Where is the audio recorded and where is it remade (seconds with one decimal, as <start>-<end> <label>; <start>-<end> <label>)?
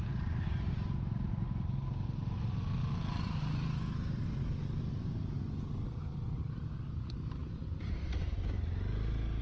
0.0-7.4 recorded; 7.4-8.3 remade; 8.3-9.4 recorded